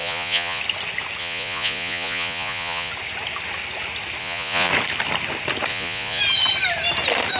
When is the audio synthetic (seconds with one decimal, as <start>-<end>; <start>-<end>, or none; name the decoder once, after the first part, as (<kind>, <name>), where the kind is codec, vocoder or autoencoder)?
0.0-0.6 (vocoder, Vocos); 1.2-2.9; 4.2-4.7; 5.7-6.2